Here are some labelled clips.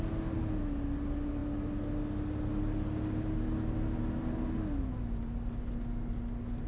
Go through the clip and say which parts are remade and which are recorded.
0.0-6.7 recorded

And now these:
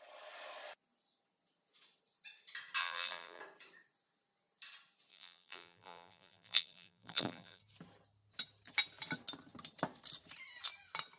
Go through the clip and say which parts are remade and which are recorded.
0.0-2.8 recorded; 2.8-3.4 remade; 3.4-5.1 recorded; 5.1-7.6 remade; 7.6-11.2 recorded

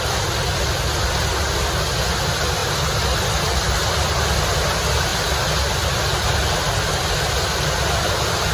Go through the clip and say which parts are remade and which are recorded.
0.0-2.6 recorded; 2.6-4.2 remade; 4.2-8.5 recorded

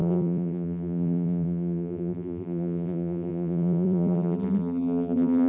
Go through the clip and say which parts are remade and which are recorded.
0.0-5.5 remade

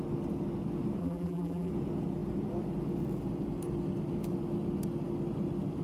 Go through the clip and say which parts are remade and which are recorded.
0.0-1.0 recorded; 1.0-1.7 remade; 1.7-5.8 recorded

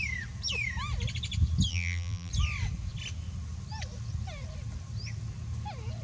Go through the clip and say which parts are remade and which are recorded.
0.0-1.7 recorded; 1.7-2.3 remade; 2.3-6.0 recorded

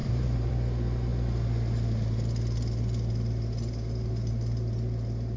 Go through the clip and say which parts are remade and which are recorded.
0.0-0.5 remade; 0.5-5.4 recorded

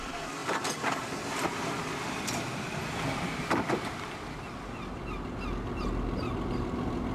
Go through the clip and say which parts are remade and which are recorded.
0.0-7.1 recorded